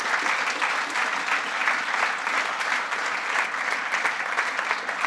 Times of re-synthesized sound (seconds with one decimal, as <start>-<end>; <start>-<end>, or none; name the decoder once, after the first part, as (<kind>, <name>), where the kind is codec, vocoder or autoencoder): none